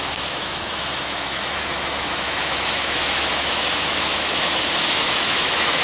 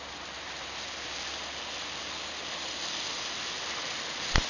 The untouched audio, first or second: second